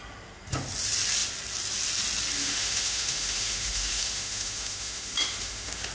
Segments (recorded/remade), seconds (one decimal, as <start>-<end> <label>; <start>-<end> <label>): 0.0-2.4 recorded; 2.4-5.9 remade